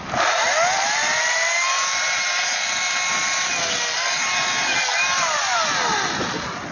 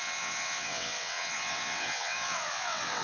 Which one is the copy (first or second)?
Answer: second